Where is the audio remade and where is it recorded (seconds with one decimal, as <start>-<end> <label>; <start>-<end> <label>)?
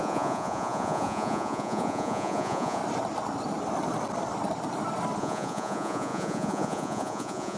0.0-2.8 remade; 2.8-5.2 recorded; 5.2-7.6 remade